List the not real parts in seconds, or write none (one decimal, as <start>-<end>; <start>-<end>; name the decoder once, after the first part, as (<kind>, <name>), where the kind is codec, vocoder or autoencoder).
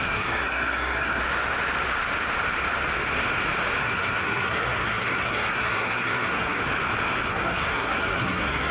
0.0-1.2 (codec, SNAC); 3.8-6.6; 7.3-8.7